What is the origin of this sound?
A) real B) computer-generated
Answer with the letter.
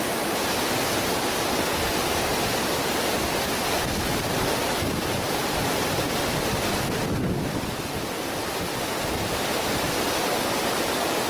A